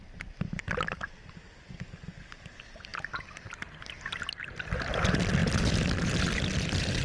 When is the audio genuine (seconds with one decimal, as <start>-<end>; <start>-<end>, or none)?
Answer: 0.0-7.0